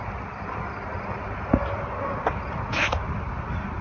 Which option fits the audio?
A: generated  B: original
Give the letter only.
B